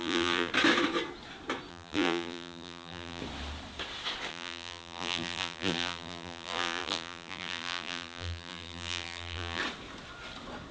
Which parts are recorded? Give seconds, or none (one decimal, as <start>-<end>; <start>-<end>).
0.5-1.7; 3.2-4.3; 9.6-10.7